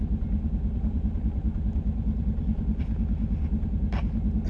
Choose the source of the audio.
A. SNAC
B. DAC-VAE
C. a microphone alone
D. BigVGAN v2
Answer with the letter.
C